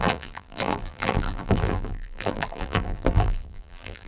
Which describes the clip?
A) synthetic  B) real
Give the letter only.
A